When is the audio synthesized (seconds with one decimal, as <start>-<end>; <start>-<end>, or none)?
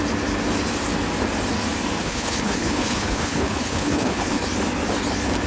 2.0-4.4